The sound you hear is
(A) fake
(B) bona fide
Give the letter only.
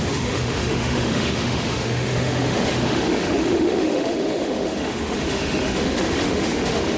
A